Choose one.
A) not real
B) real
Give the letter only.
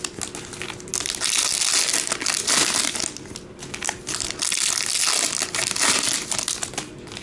B